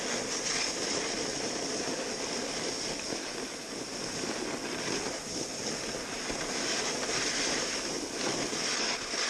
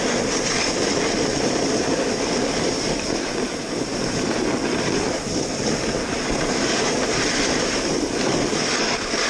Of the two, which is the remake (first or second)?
second